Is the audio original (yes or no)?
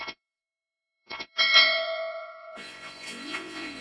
no